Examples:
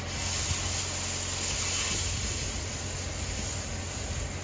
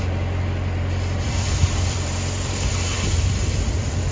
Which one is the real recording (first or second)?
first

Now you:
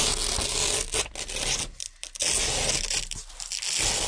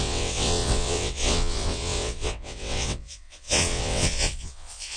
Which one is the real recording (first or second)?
first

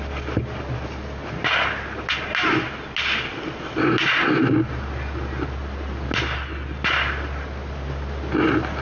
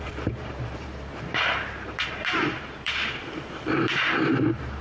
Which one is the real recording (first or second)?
first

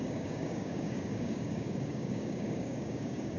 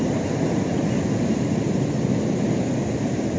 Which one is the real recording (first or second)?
second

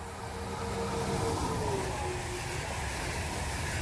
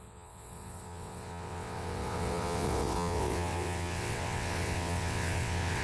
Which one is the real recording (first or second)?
first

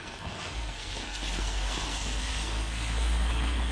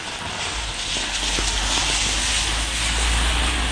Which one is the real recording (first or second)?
second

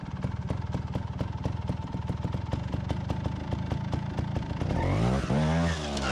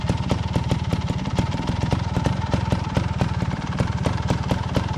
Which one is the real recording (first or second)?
first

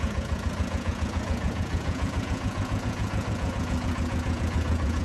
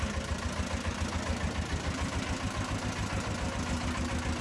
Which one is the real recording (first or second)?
second